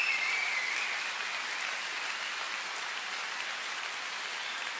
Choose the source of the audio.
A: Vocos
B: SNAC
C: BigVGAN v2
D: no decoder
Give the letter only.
D